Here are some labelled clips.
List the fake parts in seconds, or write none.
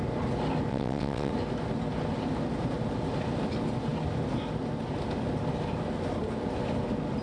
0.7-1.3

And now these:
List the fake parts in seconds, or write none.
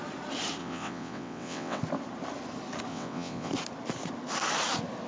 0.6-1.8; 2.9-3.5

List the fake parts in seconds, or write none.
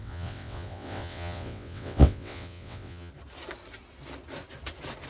0.0-3.1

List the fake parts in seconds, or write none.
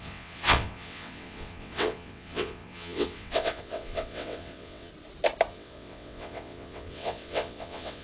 0.0-4.9; 5.5-8.0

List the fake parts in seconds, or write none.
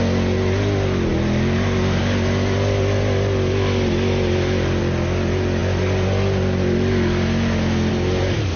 none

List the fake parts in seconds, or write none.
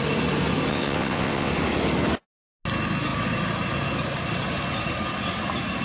0.7-1.5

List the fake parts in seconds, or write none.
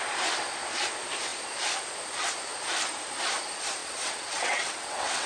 3.8-5.3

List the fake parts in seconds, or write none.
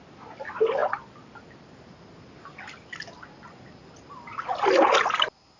none